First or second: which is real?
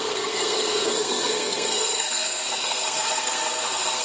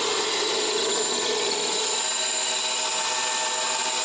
second